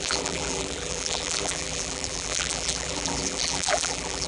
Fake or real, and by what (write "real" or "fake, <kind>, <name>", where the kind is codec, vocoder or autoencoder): fake, vocoder, BigVGAN v2